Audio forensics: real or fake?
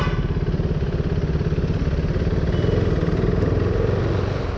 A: real